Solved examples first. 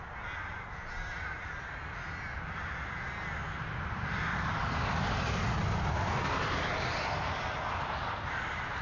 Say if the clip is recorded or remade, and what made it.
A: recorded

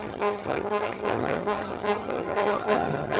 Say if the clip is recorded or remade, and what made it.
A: remade, vocoder, HiFi-GAN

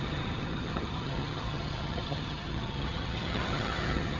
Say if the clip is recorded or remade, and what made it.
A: remade, vocoder, HiFi-GAN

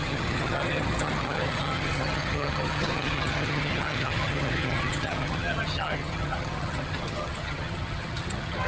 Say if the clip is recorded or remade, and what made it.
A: remade, vocoder, HiFi-GAN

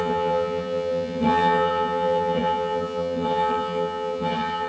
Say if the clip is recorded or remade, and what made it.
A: remade, vocoder, HiFi-GAN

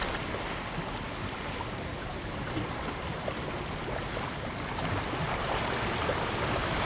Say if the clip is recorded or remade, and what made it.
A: recorded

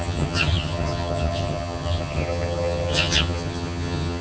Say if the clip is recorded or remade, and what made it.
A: remade, vocoder, HiFi-GAN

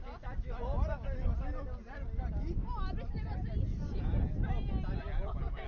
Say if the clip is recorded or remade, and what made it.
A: recorded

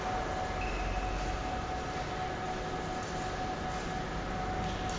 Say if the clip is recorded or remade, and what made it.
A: recorded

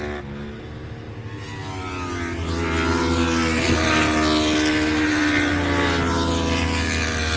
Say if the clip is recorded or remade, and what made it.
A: recorded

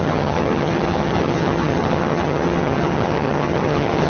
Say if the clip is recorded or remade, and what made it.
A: remade, vocoder, HiFi-GAN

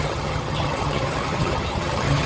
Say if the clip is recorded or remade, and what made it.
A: remade, vocoder, HiFi-GAN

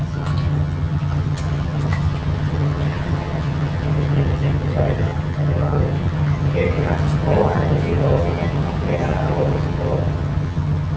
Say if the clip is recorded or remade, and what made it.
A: remade, vocoder, HiFi-GAN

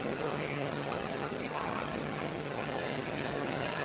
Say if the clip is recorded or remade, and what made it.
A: remade, vocoder, HiFi-GAN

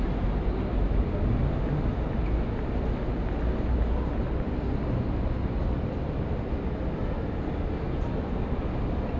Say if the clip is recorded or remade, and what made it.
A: recorded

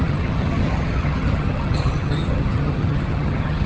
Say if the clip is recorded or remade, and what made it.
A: remade, vocoder, HiFi-GAN